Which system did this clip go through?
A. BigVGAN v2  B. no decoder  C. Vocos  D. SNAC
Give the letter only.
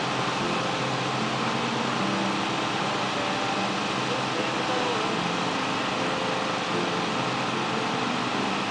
B